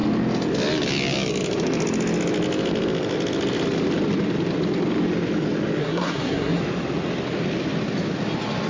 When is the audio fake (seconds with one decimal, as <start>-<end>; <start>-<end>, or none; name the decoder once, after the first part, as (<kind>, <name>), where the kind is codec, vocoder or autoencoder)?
5.8-6.6 (codec, SNAC)

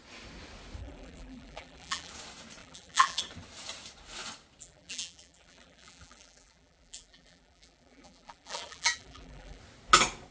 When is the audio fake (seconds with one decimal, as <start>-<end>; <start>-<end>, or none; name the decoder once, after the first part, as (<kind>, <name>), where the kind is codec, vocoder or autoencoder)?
0.8-2.1 (vocoder, BigVGAN v2); 2.6-3.2; 4.6-9.6

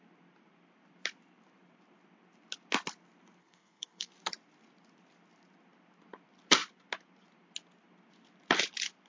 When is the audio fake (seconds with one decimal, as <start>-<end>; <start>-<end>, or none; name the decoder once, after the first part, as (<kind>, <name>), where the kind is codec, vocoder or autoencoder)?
3.4-4.1 (codec, SNAC)

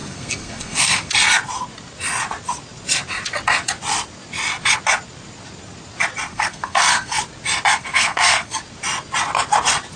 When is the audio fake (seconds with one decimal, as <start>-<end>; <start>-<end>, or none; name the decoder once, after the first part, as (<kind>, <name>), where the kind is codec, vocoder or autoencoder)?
0.0-1.1 (codec, SNAC); 6.3-7.2; 7.7-8.6

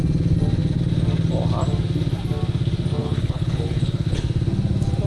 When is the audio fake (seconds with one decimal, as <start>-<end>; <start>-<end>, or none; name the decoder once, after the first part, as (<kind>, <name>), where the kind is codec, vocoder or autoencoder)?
3.0-4.2 (codec, HILCodec)

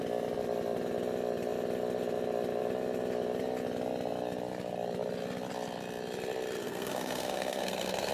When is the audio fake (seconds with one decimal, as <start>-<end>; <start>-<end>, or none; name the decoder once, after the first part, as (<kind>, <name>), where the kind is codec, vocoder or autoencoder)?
6.6-8.1 (codec, SNAC)

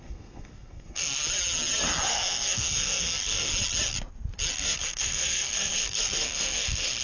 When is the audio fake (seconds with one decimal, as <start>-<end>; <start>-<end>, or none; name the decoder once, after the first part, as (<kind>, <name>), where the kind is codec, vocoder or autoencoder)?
0.0-1.2 (codec, SNAC); 2.1-3.5; 4.5-7.0

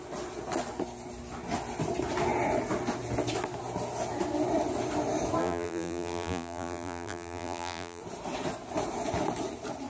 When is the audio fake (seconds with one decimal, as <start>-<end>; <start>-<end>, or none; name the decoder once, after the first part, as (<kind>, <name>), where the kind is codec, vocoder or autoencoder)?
5.4-8.0 (vocoder, BigVGAN v2)